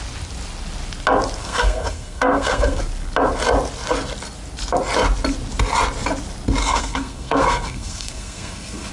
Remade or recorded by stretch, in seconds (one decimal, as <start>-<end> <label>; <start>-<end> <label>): 0.0-1.4 recorded; 1.4-2.8 remade; 2.8-6.6 recorded; 6.6-8.9 remade